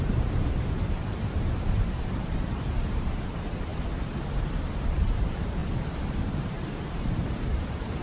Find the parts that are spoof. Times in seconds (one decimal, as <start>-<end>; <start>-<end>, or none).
0.0-3.7; 4.3-5.6; 6.2-8.0